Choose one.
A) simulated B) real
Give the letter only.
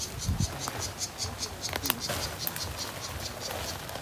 B